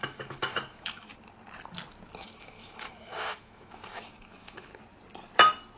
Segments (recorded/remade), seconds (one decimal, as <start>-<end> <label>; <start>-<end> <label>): 0.0-1.1 remade; 1.1-2.2 recorded; 2.2-4.7 remade; 4.7-5.8 recorded

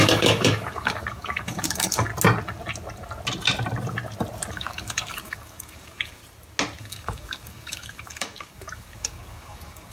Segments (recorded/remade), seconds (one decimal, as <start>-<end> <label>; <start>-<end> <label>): 0.0-2.1 remade; 2.1-4.5 recorded; 4.5-6.2 remade; 6.2-6.8 recorded; 6.8-9.9 remade